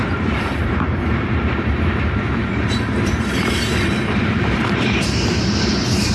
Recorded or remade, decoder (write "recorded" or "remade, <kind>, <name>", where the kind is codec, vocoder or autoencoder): remade, vocoder, BigVGAN v2